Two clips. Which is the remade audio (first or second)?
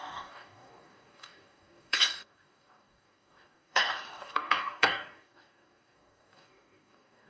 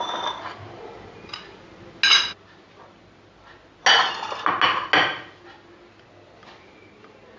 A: first